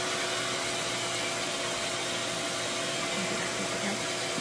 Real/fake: real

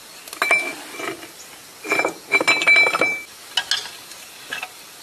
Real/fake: real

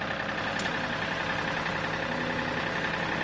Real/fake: real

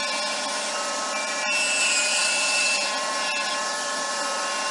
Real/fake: real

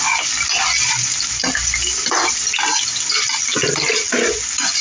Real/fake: real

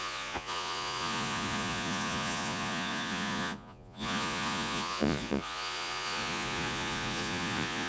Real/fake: fake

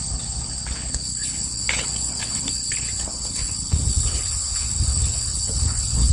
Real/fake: fake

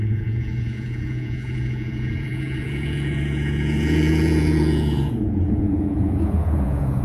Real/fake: fake